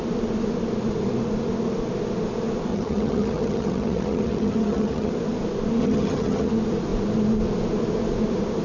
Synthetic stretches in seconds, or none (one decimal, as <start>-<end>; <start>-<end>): 2.7-5.1; 5.8-6.5